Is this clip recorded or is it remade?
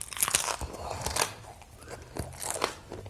recorded